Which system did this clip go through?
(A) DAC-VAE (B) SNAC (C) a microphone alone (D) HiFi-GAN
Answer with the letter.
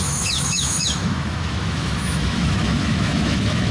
A